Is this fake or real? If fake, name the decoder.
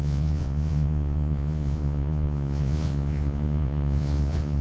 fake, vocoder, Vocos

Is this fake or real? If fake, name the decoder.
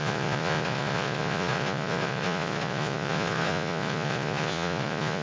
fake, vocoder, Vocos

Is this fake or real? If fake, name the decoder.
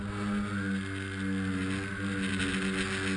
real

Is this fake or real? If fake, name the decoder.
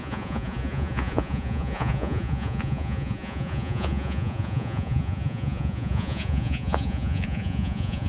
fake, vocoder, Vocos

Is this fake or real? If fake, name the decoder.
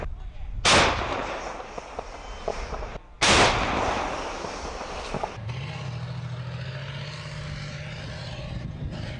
real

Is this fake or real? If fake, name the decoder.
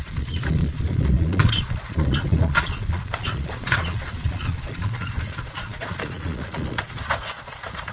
fake, vocoder, Vocos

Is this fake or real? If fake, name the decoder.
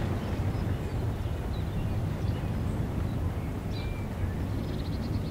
real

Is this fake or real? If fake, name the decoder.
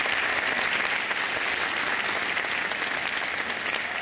real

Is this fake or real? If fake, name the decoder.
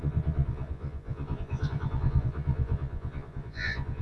fake, vocoder, Vocos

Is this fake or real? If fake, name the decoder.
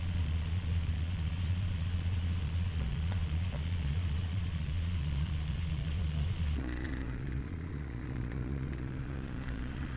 fake, vocoder, Vocos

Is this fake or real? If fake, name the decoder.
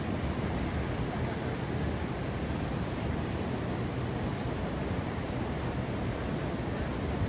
real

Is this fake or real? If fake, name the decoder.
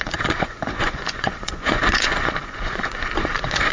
fake, vocoder, Vocos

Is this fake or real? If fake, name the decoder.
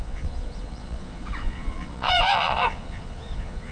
fake, vocoder, Vocos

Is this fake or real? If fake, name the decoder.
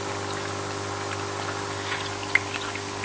real